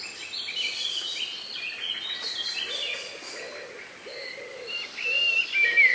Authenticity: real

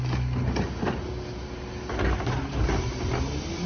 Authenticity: real